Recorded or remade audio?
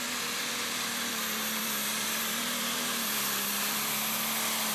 remade